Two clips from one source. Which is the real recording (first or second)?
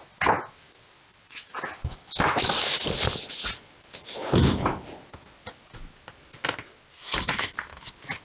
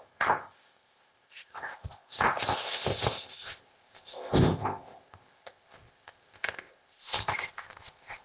first